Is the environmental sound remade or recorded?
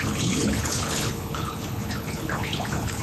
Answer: remade